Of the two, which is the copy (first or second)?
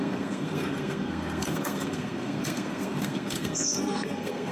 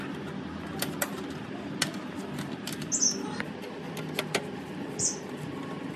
first